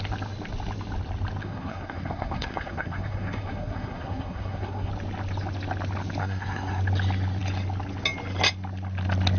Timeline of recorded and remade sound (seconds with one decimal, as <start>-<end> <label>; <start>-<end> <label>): 0.0-1.4 recorded; 1.4-4.9 remade; 4.9-6.2 recorded; 6.2-6.8 remade; 6.8-9.4 recorded